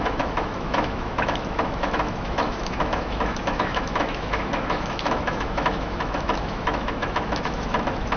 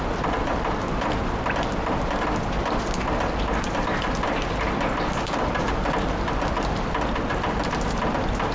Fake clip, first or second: first